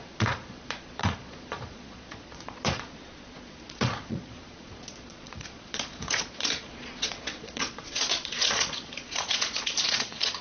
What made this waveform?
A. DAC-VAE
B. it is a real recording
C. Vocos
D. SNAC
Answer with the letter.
C